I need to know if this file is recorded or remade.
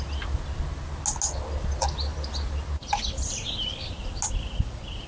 recorded